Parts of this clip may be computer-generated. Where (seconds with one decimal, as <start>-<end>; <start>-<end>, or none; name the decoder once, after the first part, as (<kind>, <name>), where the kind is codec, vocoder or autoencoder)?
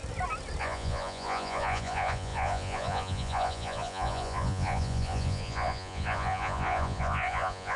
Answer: 0.6-7.8 (vocoder, Vocos)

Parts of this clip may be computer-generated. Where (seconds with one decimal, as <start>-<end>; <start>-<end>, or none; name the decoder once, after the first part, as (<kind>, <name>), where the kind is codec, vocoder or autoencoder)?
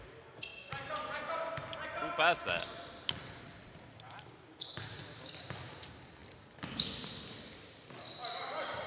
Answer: none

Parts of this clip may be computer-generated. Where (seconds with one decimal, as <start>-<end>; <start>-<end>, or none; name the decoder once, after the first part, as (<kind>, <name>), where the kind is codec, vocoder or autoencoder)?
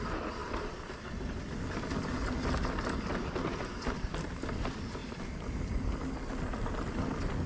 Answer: none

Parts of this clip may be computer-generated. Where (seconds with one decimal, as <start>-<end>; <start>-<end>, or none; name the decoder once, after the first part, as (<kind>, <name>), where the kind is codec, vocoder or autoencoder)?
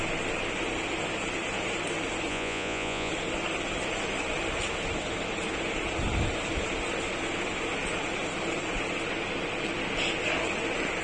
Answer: 2.3-3.1 (vocoder, Vocos)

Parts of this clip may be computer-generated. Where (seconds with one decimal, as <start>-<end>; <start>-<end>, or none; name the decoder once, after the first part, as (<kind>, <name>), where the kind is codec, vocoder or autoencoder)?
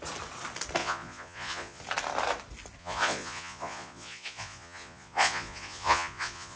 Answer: 0.8-1.8 (vocoder, Vocos); 2.8-6.6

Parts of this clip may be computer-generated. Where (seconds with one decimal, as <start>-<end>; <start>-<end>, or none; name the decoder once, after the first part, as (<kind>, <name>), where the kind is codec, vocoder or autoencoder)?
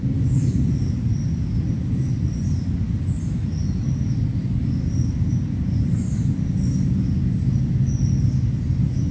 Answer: none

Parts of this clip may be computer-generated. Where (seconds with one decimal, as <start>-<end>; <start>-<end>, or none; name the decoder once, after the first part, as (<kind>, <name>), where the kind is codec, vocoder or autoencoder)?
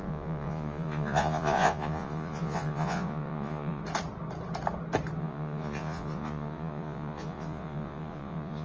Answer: 0.0-3.8 (vocoder, Vocos); 5.2-8.6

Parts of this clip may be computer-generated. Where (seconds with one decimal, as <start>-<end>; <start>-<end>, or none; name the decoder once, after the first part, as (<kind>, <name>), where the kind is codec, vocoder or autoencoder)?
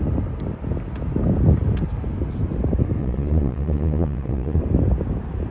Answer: 3.0-4.6 (vocoder, Vocos)